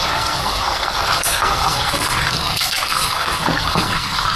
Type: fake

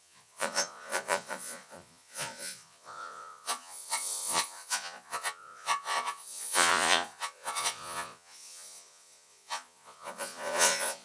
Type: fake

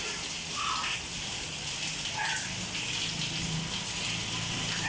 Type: real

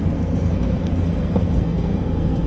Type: fake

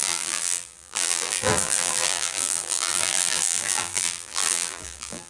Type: fake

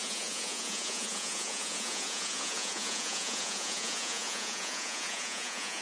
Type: fake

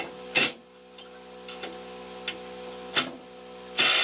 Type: real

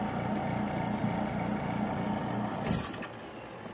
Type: real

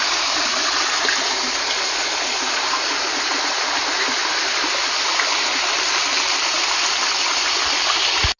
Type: real